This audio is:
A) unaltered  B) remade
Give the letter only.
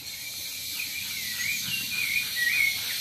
A